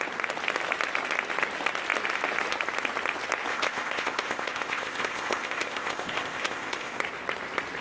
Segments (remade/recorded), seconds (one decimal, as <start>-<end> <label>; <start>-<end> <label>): 0.0-3.5 recorded; 3.5-7.0 remade; 7.0-7.8 recorded